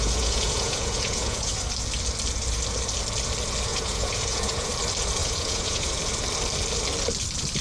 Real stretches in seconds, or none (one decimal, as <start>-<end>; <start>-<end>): 1.5-3.7; 4.7-5.2; 6.0-7.6